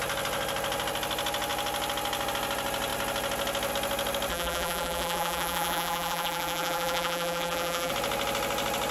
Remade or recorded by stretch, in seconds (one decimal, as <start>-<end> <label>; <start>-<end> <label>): 0.0-4.3 recorded; 4.3-7.9 remade; 7.9-8.9 recorded